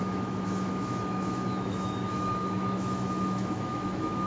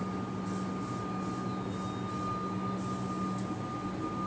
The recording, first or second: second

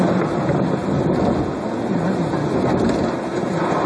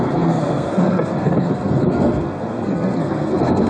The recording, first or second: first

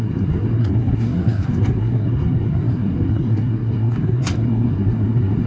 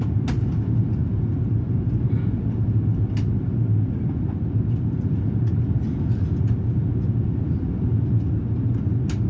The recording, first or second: second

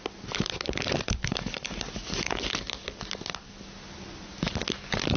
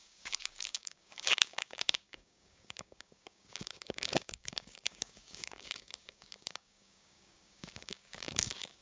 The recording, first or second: first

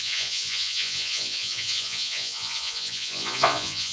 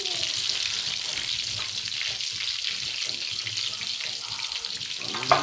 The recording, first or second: second